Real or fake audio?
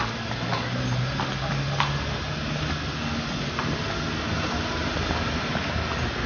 real